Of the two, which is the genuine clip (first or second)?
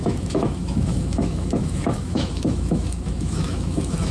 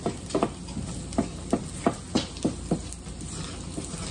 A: second